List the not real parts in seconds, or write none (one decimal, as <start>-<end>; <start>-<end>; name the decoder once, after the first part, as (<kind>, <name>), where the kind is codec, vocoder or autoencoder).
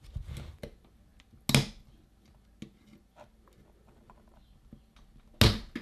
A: none